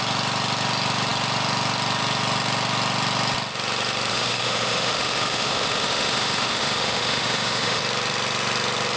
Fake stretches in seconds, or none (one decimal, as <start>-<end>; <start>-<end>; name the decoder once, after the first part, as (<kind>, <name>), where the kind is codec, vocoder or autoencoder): 4.1-7.8 (autoencoder, DAC-VAE)